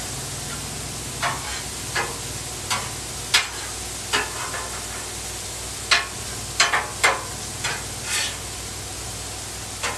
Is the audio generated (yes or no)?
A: no